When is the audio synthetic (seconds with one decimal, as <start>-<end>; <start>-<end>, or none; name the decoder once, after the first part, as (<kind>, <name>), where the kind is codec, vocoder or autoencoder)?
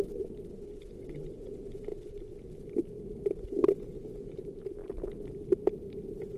1.9-3.0 (vocoder, BigVGAN v2); 4.8-5.4